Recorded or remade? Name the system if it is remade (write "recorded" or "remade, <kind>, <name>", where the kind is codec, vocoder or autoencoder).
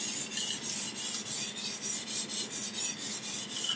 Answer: recorded